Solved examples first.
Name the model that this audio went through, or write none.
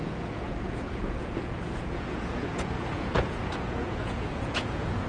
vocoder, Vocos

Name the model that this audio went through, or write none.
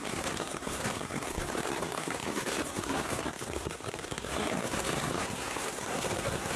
codec, SNAC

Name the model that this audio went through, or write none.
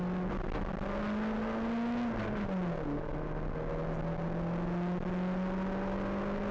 none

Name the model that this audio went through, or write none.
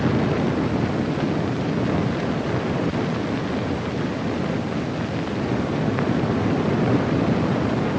none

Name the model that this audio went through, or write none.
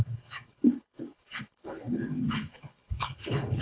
codec, HILCodec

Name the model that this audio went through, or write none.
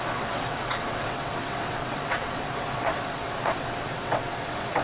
vocoder, WaveNeXt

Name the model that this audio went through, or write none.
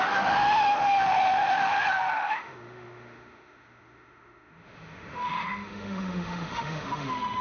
autoencoder, DAC-VAE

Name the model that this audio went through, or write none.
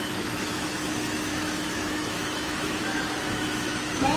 autoencoder, DAC-VAE